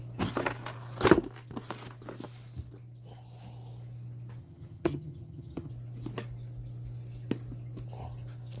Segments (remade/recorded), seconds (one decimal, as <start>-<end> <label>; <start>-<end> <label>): 0.0-4.4 recorded; 4.4-5.7 remade; 5.7-8.6 recorded